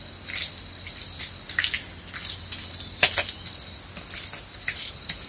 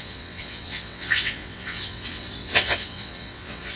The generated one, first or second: second